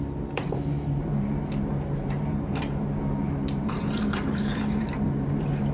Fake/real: fake